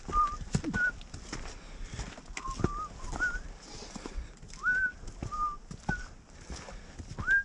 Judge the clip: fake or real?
real